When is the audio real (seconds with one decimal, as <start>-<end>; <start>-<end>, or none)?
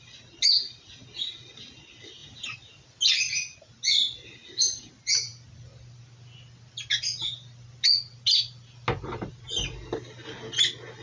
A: 0.0-11.0